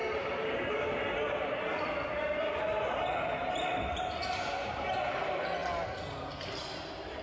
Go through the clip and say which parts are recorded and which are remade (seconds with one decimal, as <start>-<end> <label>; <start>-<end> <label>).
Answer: 0.0-7.2 recorded